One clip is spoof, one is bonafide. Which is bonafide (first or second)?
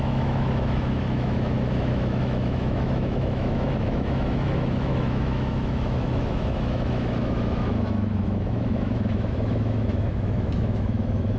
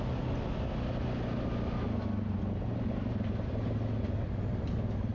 second